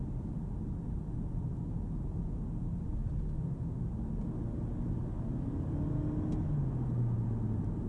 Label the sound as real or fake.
real